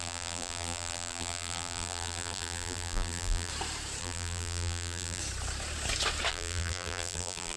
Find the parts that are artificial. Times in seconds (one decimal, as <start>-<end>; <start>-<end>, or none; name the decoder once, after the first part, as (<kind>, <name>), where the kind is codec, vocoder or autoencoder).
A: 0.0-3.5 (vocoder, BigVGAN v2); 4.0-5.2; 6.3-7.6